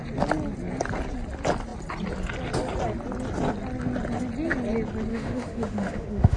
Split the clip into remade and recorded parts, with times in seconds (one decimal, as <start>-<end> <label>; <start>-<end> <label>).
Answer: 0.0-5.1 recorded; 5.1-6.4 remade